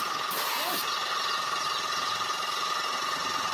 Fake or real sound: real